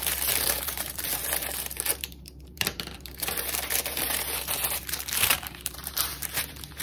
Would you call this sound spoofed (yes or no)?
yes